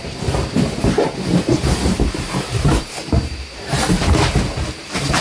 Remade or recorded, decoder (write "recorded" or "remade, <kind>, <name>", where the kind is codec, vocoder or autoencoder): remade, vocoder, BigVGAN v2